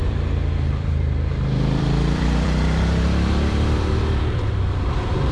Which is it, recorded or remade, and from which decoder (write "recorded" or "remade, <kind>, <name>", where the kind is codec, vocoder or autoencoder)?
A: remade, vocoder, BigVGAN v2